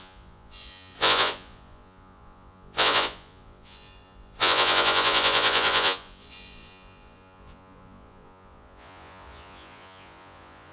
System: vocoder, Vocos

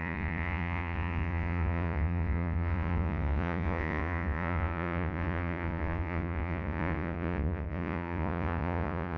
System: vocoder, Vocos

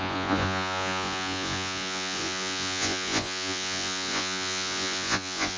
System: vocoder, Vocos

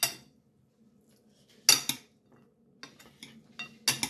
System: none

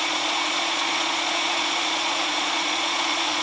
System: vocoder, Vocos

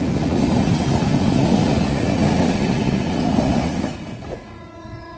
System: vocoder, Vocos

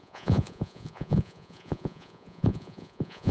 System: vocoder, Vocos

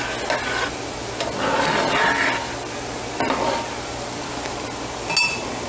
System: none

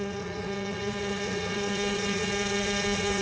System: vocoder, Vocos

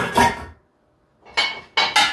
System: none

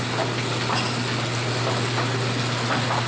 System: none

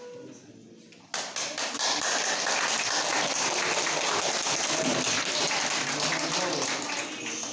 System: none